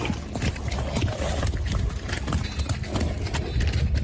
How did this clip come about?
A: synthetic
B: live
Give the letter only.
B